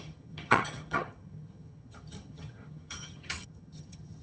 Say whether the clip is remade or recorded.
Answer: remade